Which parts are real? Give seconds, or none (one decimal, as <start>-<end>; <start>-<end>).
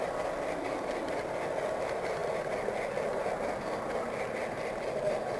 0.0-5.4